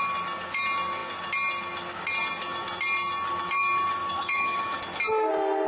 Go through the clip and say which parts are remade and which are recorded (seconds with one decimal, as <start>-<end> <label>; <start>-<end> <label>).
0.0-4.0 recorded; 4.0-4.8 remade; 4.8-5.7 recorded